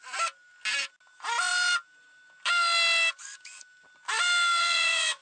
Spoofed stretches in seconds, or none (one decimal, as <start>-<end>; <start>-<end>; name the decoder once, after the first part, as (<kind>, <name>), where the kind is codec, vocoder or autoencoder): 4.6-5.2 (vocoder, WaveNeXt)